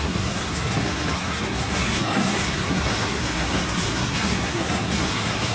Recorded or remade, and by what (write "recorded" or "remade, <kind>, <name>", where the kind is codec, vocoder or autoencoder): remade, codec, SNAC